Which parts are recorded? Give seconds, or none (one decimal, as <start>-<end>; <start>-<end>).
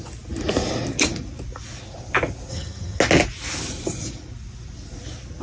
0.0-2.5; 3.0-5.4